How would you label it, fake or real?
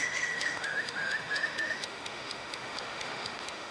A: fake